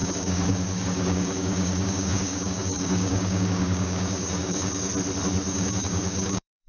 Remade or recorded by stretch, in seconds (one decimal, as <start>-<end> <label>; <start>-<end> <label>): 0.0-4.9 remade; 4.9-5.5 recorded; 5.5-6.7 remade